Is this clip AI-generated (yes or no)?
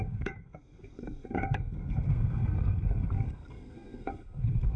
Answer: yes